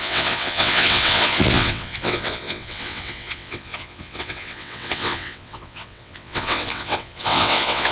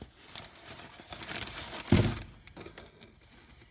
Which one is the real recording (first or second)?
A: second